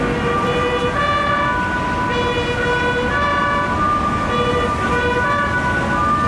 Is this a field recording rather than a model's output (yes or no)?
yes